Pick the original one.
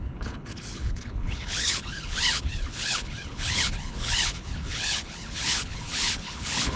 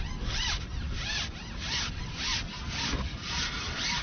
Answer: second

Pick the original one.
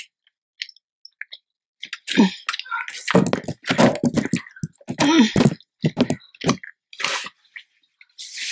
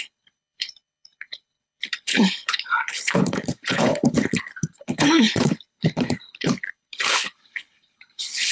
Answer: first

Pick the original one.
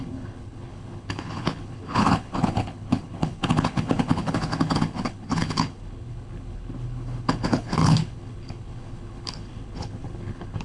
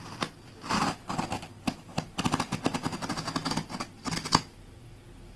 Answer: second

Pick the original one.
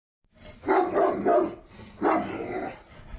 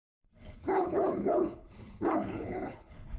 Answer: first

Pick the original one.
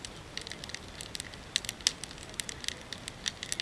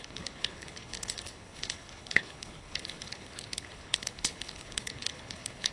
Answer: first